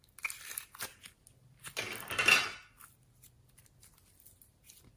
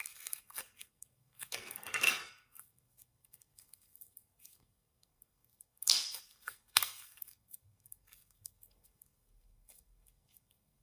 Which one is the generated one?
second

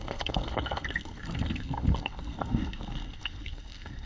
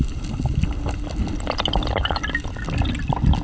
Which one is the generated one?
first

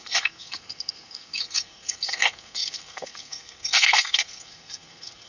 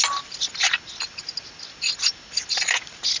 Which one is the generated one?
first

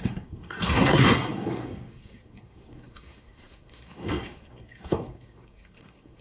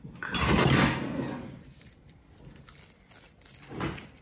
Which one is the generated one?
first